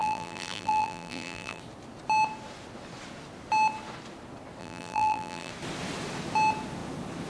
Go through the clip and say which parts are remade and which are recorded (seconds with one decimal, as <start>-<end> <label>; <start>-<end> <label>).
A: 0.0-1.6 remade; 1.6-4.6 recorded; 4.6-5.5 remade; 5.5-7.3 recorded